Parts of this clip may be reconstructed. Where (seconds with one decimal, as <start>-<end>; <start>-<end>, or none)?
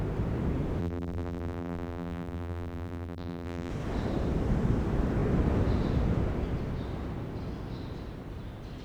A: 0.8-3.7